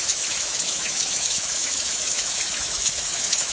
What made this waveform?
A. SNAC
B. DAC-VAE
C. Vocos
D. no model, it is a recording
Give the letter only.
B